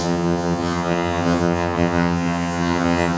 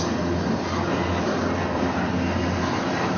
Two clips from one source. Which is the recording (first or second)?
second